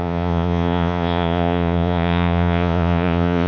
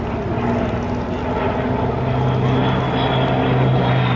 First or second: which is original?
second